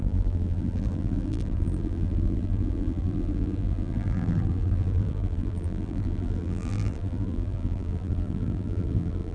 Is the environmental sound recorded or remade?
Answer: remade